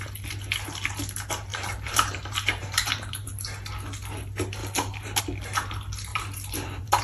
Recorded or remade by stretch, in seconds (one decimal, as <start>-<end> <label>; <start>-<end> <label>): 0.0-1.5 recorded; 1.5-3.3 remade; 3.3-4.6 recorded; 4.6-5.2 remade; 5.2-6.1 recorded; 6.1-7.0 remade